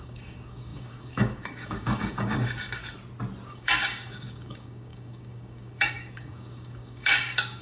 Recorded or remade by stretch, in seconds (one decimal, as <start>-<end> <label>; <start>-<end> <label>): 0.0-2.8 remade; 2.8-3.5 recorded; 3.5-7.6 remade